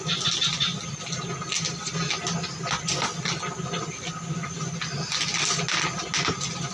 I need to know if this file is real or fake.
real